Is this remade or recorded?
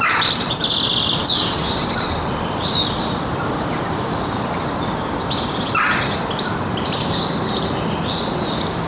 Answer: remade